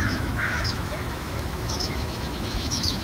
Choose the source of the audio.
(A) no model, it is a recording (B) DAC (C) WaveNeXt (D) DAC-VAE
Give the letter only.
D